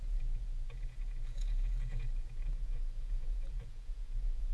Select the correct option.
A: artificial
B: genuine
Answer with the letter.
A